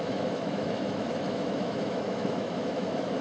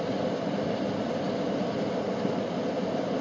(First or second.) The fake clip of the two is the first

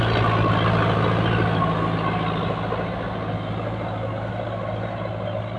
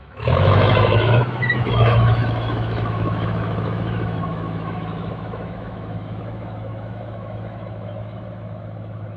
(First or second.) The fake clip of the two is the second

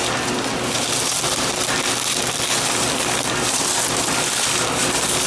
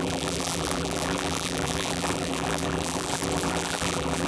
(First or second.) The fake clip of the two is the second